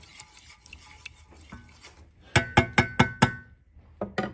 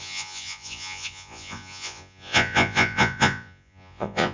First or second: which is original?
first